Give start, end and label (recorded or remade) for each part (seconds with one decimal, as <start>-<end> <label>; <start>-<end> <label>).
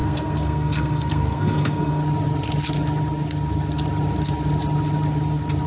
0.0-2.0 remade; 2.0-5.7 recorded